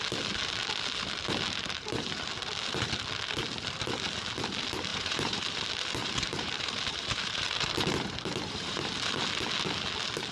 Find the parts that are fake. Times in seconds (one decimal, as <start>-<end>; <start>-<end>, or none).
4.9-5.4; 6.0-8.9